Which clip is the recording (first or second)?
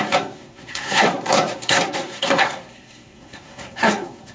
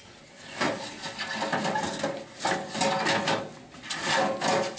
second